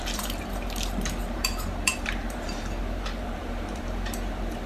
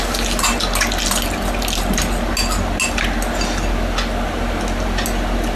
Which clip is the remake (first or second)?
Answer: first